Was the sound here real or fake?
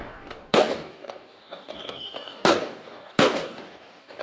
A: fake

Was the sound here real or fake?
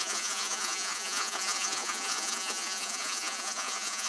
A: fake